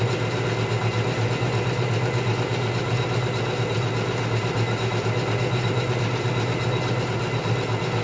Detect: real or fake real